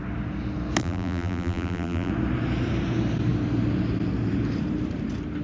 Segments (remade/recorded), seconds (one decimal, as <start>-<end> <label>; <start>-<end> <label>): 0.0-0.8 recorded; 0.8-2.1 remade; 2.1-5.4 recorded